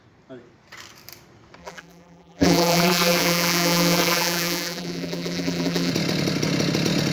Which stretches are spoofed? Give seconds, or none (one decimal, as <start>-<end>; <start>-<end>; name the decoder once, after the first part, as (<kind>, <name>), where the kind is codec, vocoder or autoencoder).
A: 1.6-5.9 (vocoder, BigVGAN v2)